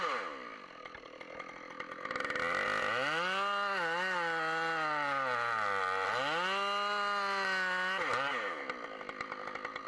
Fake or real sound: real